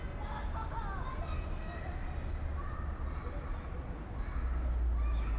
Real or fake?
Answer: real